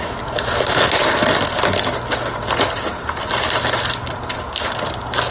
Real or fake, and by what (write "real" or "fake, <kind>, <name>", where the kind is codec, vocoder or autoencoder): real